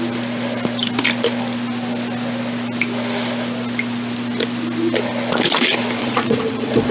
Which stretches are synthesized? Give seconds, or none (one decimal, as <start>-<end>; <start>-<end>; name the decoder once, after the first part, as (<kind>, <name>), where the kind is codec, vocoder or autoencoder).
6.0-6.9 (vocoder, Vocos)